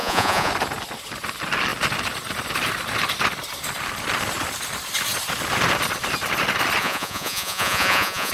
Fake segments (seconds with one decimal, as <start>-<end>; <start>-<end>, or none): 0.0-0.5; 6.8-8.3